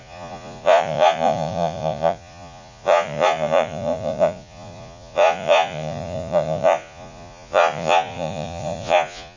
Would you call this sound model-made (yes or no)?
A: yes